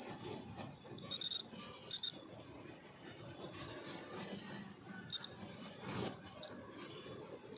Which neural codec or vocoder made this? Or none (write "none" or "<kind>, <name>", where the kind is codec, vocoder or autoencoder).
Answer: none